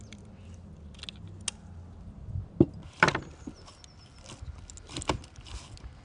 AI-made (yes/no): no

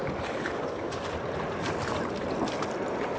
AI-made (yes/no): no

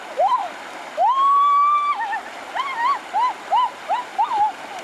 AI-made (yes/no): no